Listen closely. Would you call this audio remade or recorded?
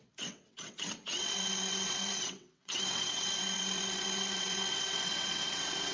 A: remade